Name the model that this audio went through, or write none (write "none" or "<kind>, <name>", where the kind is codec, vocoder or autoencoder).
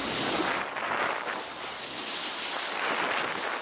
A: none